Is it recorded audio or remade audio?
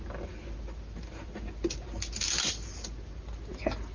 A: recorded